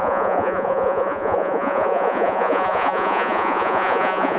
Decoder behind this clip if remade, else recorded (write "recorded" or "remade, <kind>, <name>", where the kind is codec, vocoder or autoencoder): remade, vocoder, Vocos